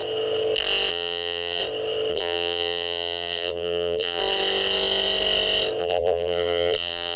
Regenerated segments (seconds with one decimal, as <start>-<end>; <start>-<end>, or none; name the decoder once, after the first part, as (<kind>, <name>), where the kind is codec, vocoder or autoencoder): 0.9-1.6 (vocoder, BigVGAN v2); 2.1-4.2; 5.8-7.2